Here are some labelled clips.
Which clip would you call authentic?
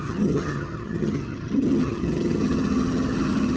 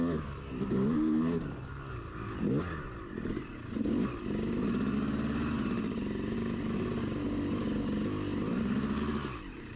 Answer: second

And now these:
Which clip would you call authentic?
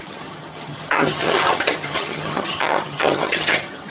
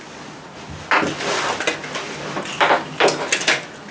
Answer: second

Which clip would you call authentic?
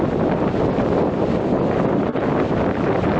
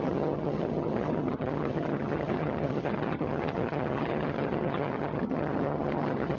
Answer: first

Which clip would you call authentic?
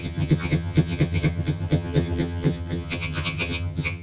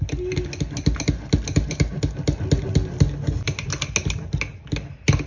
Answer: second